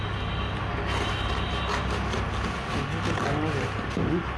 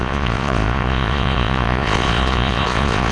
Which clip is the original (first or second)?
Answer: first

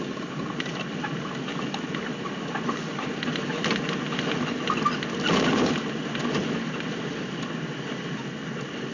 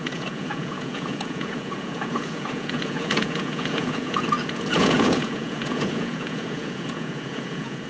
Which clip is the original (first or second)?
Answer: first